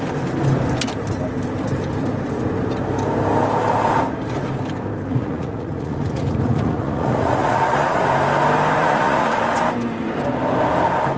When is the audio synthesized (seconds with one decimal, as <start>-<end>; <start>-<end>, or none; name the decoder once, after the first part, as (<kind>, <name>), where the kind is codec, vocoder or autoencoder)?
5.1-8.0 (vocoder, Vocos); 8.8-9.4

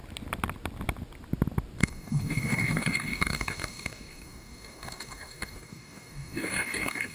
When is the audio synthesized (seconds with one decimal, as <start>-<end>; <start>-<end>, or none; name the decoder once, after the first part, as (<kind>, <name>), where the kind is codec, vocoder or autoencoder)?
1.8-7.1 (codec, DAC)